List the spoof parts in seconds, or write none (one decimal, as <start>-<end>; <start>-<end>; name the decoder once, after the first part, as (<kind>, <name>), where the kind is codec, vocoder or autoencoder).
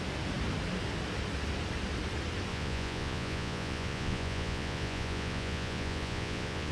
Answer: 2.5-6.7 (vocoder, Vocos)